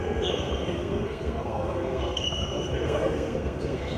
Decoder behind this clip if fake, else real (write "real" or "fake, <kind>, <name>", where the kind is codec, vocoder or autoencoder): fake, codec, SNAC